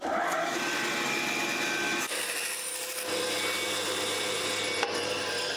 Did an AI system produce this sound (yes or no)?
no